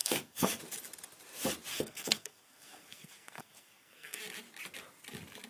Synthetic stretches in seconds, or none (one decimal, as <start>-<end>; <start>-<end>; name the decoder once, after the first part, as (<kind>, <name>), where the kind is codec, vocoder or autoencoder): 0.0-0.6 (codec, SNAC); 1.7-4.2

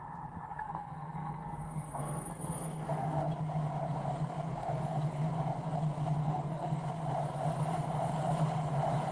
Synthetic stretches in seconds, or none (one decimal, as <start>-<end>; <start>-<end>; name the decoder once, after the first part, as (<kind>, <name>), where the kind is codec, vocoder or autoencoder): 0.5-3.2 (codec, SNAC); 4.5-5.3; 6.2-6.8

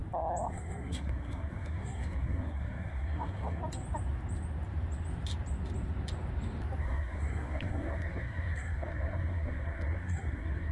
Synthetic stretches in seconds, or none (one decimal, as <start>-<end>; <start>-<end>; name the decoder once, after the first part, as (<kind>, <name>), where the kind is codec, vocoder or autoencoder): 0.5-3.6 (codec, SNAC); 6.8-10.7

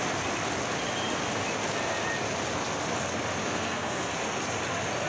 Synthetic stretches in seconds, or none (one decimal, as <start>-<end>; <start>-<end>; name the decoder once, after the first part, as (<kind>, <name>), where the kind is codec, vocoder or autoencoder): 3.4-4.1 (codec, SNAC)

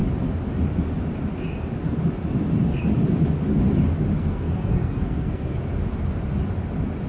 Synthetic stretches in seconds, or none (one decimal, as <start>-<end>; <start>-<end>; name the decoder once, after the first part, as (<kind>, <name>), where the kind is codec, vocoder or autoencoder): 4.2-5.6 (codec, SNAC)

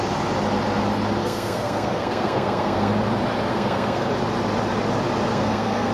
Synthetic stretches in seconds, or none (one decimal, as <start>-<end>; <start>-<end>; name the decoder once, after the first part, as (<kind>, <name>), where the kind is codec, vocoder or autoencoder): 1.2-2.9 (codec, SNAC); 3.5-4.1; 5.3-5.9

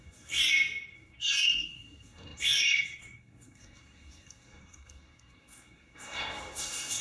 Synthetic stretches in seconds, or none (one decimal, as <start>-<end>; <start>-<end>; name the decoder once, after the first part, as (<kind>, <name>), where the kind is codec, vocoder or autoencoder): 0.0-0.4 (codec, SNAC); 0.9-7.0